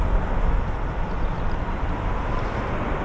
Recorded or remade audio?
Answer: recorded